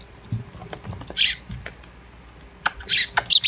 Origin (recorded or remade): recorded